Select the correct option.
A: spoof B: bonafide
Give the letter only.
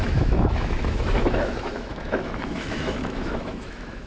A